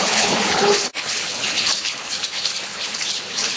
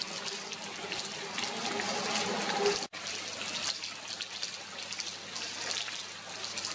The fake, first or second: first